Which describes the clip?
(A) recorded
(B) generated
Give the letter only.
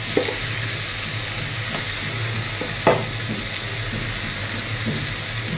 A